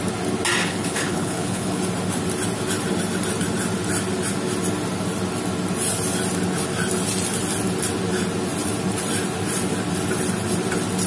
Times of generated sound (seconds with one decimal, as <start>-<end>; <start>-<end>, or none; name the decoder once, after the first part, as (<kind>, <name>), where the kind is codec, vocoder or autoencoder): 0.6-1.8 (codec, HILCodec)